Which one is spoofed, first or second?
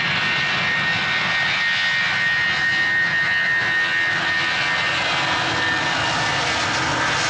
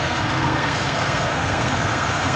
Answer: second